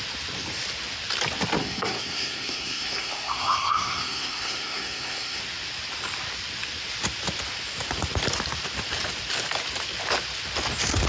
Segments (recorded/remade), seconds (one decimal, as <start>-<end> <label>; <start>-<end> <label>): 0.0-1.6 recorded; 1.6-5.4 remade; 5.4-11.1 recorded